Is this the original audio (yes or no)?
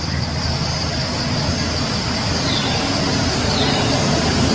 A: yes